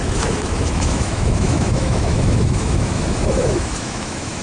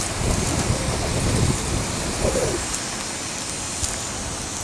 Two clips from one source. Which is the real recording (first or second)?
second